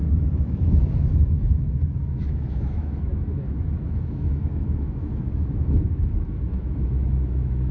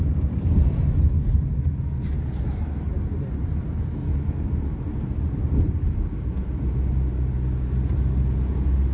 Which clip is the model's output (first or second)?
first